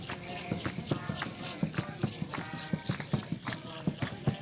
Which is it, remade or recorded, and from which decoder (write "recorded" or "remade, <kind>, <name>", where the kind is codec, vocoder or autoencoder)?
recorded